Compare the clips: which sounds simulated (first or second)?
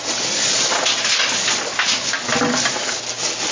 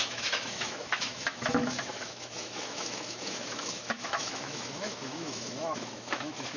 second